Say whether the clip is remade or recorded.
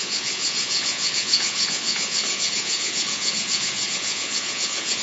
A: remade